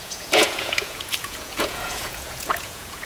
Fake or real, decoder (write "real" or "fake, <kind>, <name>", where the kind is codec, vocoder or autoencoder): fake, vocoder, Vocos